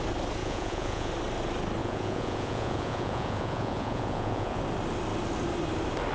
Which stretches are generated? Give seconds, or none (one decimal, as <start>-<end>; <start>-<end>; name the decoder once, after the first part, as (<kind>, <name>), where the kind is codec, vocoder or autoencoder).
0.4-1.1 (vocoder, Vocos); 1.8-4.6

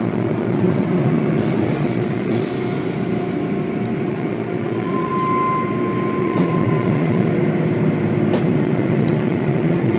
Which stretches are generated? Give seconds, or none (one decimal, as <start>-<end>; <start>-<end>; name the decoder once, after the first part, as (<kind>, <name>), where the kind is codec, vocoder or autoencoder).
0.0-2.5 (vocoder, Vocos); 4.1-5.1; 6.2-7.3; 8.4-10.0